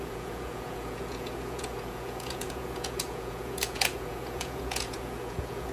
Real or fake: fake